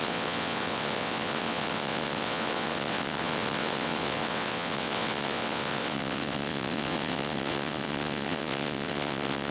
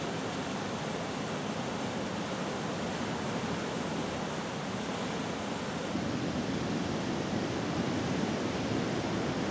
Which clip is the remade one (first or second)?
first